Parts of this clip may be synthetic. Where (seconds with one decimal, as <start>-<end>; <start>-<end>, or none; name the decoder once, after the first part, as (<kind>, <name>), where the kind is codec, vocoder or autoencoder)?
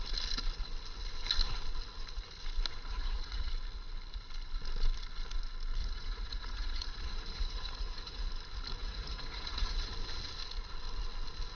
2.9-3.5 (vocoder, Vocos); 5.8-8.3; 8.8-9.9